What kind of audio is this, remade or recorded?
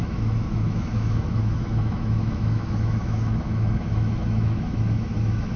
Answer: remade